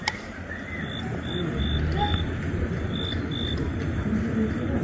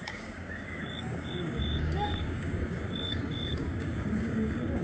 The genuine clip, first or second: first